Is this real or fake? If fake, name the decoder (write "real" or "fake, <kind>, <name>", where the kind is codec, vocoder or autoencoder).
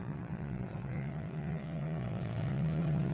fake, vocoder, WaveNeXt